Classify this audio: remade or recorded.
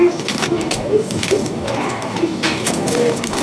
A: remade